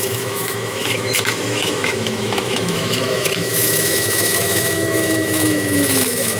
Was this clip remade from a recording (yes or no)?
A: yes